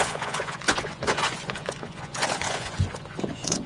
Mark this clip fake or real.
fake